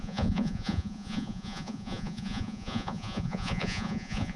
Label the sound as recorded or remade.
remade